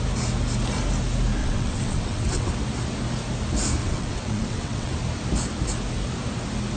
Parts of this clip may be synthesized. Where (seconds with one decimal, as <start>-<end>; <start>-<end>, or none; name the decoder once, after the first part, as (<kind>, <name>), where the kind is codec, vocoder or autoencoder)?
1.4-2.5 (vocoder, WaveNeXt); 3.8-4.9